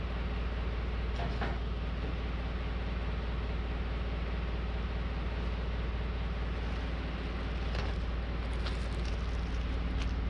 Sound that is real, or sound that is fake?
real